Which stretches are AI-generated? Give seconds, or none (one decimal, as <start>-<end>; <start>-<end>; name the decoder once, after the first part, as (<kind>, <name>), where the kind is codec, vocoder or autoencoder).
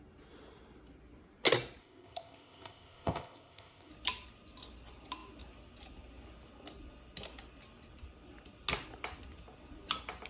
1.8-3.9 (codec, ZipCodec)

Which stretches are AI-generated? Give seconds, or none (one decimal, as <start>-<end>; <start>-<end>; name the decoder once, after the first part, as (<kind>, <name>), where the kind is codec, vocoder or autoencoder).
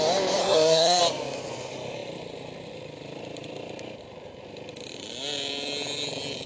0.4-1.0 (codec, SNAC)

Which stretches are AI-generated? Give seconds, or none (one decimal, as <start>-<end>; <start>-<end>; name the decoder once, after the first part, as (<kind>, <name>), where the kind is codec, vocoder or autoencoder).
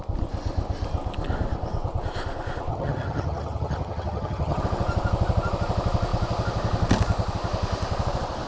2.7-4.6 (vocoder, HiFi-GAN)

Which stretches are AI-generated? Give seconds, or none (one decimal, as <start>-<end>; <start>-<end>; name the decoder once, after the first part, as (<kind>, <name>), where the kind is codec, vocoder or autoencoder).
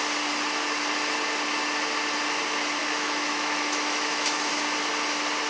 2.8-4.5 (autoencoder, DAC-VAE)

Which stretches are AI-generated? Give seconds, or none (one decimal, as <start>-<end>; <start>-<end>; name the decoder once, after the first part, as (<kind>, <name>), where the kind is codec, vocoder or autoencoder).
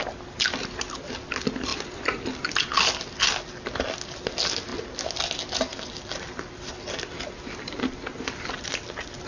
none